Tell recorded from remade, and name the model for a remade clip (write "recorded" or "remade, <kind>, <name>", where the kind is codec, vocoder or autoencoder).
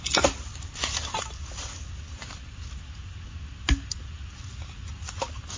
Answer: recorded